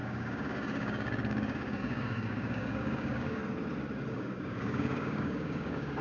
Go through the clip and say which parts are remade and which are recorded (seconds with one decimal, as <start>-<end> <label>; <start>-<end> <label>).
0.0-3.4 remade; 3.4-4.1 recorded; 4.1-6.0 remade